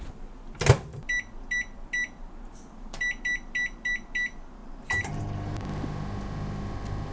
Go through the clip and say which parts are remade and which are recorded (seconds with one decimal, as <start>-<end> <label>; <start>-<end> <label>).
0.0-4.6 recorded; 4.6-5.2 remade; 5.2-7.1 recorded

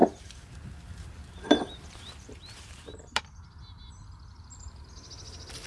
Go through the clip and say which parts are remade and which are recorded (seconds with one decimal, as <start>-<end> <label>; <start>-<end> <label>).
0.0-3.4 remade; 3.4-5.7 recorded

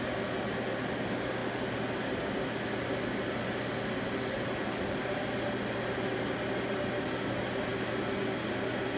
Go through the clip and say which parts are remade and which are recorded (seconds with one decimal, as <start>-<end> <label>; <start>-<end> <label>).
0.0-9.0 recorded